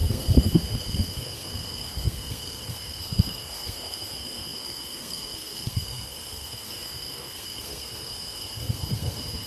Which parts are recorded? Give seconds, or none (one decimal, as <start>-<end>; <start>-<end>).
none